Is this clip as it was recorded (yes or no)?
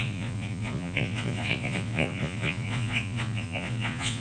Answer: no